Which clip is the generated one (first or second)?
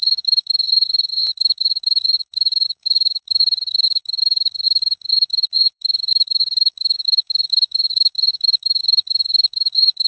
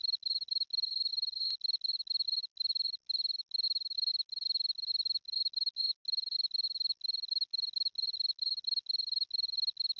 first